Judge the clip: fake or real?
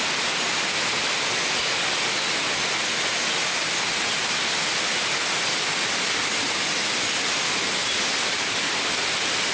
real